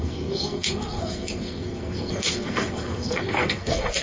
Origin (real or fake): fake